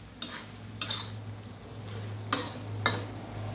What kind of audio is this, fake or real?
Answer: real